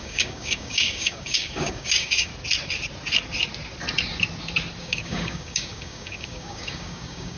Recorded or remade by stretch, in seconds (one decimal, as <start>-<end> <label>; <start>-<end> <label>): 0.0-2.3 remade; 2.3-4.8 recorded; 4.8-7.4 remade